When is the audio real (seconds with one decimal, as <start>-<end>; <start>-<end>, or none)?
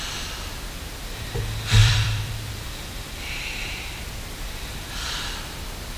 0.0-1.8; 4.0-6.0